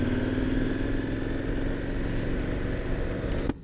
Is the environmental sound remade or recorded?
recorded